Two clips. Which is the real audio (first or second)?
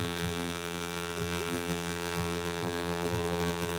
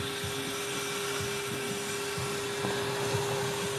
second